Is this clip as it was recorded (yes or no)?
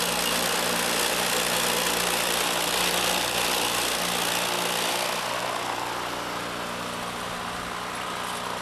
yes